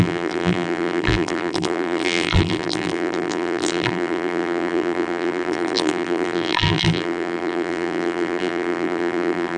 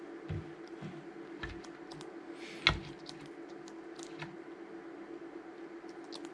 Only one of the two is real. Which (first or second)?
second